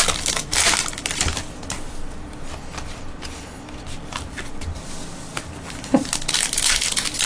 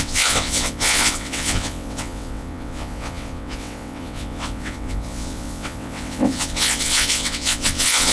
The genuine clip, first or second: first